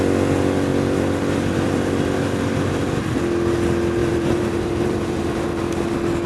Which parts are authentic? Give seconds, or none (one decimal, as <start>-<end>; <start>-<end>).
0.0-4.0; 5.6-6.3